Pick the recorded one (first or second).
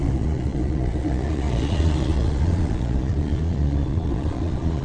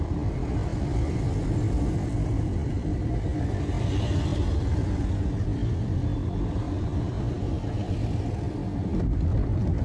second